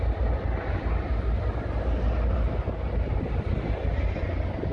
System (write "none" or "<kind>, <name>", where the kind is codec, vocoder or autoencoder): none